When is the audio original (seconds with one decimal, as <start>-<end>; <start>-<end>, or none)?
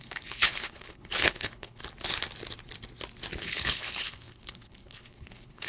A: 1.8-3.4